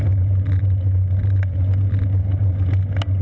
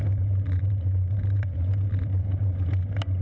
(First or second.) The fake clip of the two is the second